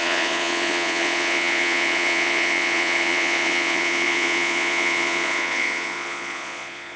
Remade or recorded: remade